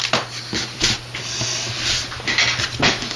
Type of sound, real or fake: real